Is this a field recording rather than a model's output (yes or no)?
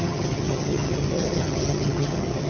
no